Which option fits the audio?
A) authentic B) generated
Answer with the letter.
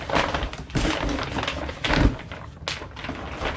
A